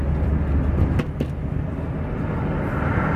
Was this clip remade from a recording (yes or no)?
no